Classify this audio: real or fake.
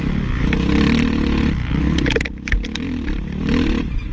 real